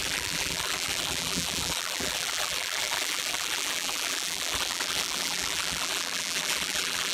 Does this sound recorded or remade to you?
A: remade